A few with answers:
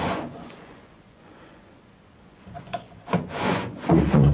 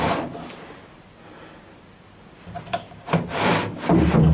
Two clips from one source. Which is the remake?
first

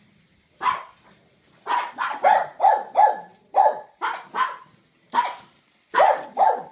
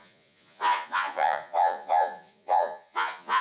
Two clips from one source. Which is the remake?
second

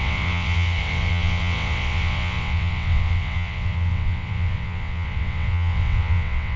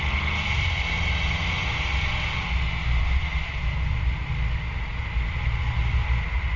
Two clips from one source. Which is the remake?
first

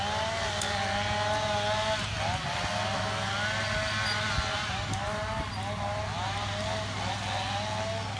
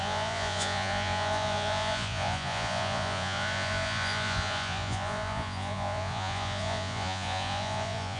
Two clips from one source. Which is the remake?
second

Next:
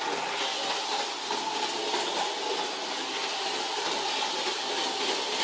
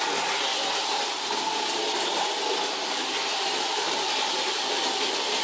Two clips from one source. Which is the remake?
second